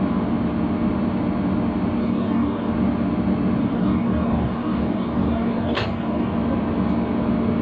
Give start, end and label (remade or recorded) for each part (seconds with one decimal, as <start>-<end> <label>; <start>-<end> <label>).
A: 0.0-2.0 recorded; 2.0-2.7 remade; 2.7-3.6 recorded; 3.6-6.3 remade; 6.3-7.6 recorded